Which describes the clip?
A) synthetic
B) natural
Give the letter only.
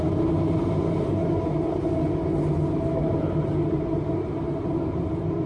B